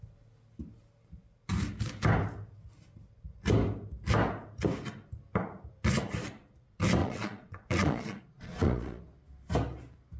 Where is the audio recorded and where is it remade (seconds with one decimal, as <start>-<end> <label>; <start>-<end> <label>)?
0.0-7.0 recorded; 7.0-9.0 remade; 9.0-10.2 recorded